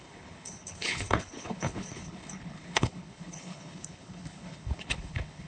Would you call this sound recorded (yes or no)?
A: no